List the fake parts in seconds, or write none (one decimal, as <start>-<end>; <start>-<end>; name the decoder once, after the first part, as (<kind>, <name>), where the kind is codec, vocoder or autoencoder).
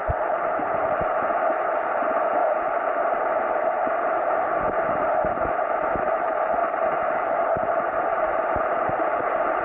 none